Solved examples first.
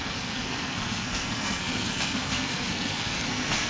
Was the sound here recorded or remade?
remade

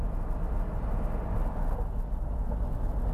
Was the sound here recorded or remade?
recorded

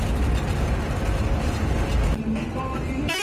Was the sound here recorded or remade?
recorded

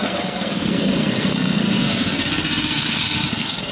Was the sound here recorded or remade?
remade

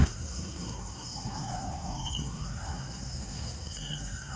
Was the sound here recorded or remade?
remade